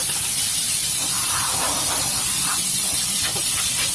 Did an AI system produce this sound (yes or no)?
yes